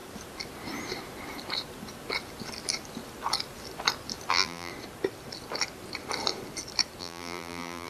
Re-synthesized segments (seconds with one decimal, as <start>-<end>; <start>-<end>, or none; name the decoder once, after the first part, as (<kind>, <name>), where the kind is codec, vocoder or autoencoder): 4.3-4.7 (vocoder, BigVGAN v2); 7.0-7.9